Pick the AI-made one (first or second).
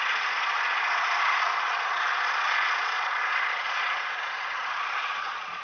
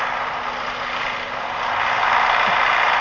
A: first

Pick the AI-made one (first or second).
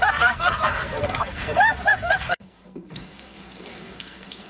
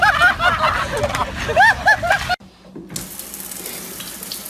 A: first